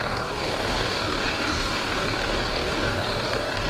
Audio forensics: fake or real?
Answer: fake